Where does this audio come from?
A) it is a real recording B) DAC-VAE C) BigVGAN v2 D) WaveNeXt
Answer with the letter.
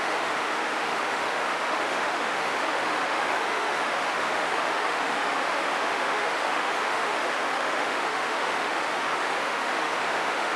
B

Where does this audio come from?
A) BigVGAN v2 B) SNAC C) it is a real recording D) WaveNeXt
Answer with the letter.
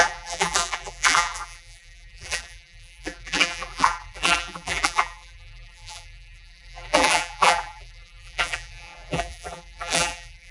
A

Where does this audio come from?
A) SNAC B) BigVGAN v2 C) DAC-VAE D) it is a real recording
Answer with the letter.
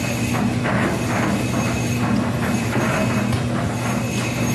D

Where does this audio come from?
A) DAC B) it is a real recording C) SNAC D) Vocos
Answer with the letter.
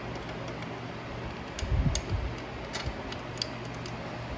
B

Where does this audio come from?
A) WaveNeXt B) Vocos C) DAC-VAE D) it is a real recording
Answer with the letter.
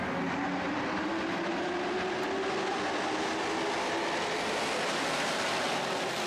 D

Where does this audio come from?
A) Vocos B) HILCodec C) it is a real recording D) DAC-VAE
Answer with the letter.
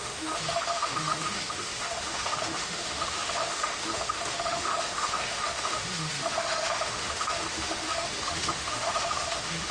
D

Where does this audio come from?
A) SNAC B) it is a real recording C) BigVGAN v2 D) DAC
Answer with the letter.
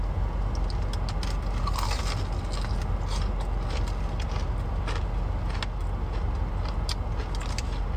B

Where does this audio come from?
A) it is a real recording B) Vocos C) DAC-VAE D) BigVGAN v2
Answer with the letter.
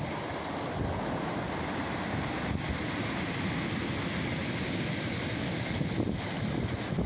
A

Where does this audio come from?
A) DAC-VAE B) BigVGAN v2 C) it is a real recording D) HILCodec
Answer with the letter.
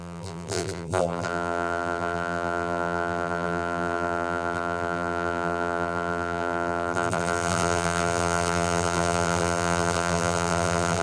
B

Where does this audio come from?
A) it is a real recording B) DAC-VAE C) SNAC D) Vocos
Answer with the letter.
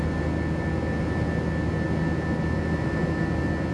A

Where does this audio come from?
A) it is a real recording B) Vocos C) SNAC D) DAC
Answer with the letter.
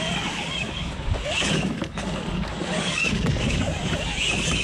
D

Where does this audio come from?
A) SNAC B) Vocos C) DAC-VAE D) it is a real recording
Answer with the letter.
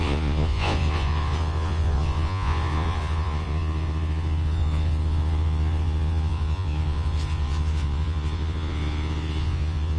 B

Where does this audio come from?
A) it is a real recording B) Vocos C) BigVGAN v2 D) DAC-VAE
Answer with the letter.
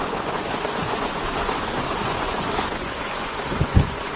B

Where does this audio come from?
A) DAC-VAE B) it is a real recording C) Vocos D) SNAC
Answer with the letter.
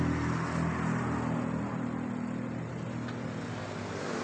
B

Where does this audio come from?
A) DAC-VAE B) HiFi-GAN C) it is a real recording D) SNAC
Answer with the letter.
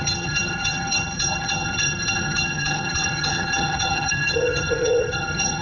B